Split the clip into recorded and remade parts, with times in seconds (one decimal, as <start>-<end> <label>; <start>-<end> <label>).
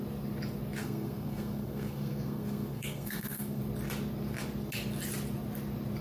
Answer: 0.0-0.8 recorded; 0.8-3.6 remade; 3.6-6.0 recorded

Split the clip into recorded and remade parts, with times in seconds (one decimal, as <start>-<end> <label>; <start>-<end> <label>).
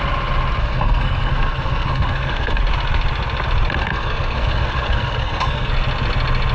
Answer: 0.0-0.6 recorded; 0.6-2.6 remade; 2.6-3.8 recorded; 3.8-5.7 remade; 5.7-6.5 recorded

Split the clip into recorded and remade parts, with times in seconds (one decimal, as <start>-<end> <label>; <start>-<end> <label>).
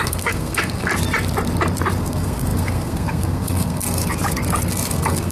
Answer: 0.0-0.9 remade; 0.9-2.0 recorded; 2.0-4.0 remade; 4.0-4.7 recorded; 4.7-5.3 remade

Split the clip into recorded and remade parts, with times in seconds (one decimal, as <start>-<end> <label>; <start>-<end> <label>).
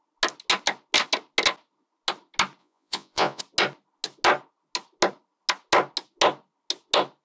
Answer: 0.0-2.6 recorded; 2.6-3.4 remade; 3.4-7.2 recorded